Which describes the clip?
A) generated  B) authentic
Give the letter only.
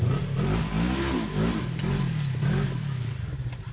B